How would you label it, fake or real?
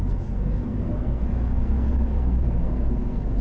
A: fake